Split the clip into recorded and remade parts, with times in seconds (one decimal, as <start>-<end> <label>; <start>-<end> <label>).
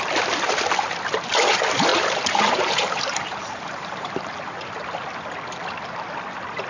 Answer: 0.0-1.9 recorded; 1.9-4.1 remade; 4.1-6.7 recorded